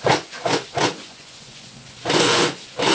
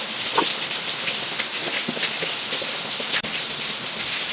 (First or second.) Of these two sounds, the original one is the second